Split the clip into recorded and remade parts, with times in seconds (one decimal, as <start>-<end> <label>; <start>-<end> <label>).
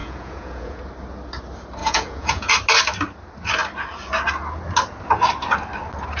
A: 0.0-0.8 remade; 0.8-1.8 recorded; 1.8-2.5 remade; 2.5-6.2 recorded